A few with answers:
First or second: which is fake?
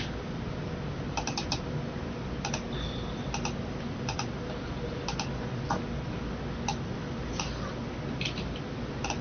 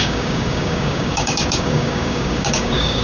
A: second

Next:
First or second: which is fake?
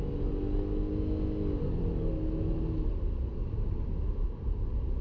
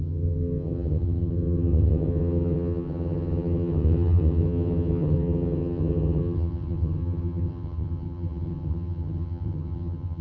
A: second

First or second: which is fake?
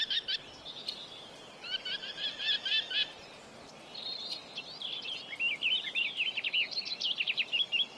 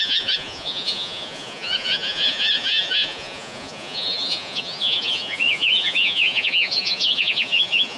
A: second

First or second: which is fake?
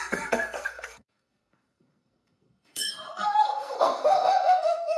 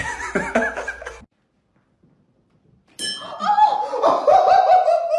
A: first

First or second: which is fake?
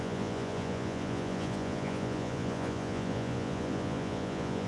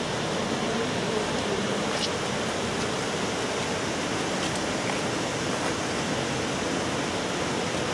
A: first